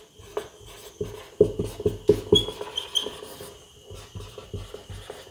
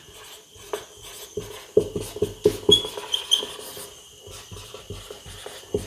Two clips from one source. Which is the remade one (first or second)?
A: second